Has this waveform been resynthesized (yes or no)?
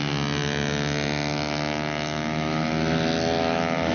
no